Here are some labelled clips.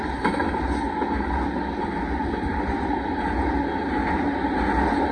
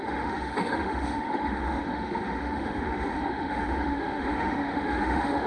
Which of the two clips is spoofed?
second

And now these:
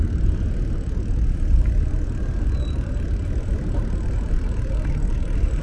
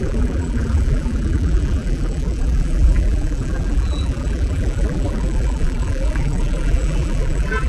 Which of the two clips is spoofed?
second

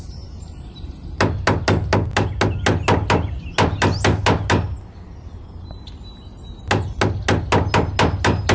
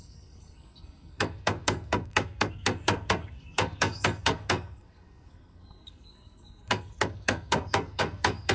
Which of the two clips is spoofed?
second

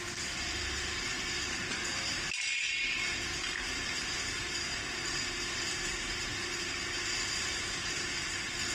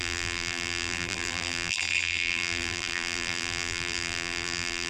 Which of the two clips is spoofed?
second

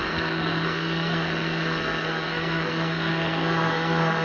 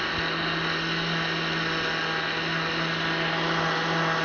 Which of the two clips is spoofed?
first